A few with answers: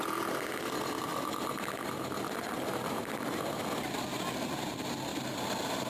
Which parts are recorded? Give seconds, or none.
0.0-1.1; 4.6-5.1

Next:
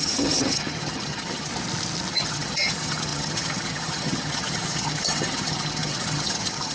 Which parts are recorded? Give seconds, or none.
1.5-2.1

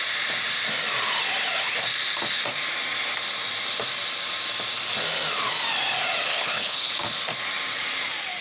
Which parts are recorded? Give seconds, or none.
0.0-6.3; 6.9-8.4